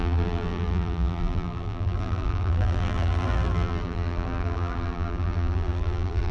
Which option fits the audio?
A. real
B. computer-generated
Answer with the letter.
B